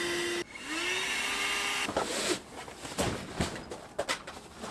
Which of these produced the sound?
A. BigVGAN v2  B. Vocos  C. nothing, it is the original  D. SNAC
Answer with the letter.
C